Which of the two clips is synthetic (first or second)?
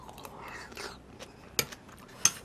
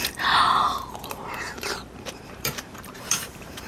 second